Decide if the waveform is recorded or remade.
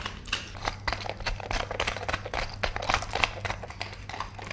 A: recorded